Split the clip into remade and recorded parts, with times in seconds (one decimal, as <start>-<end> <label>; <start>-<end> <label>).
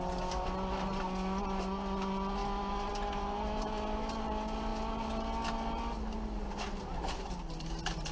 0.0-8.1 recorded